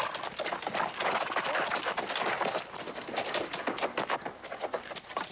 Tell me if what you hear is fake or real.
real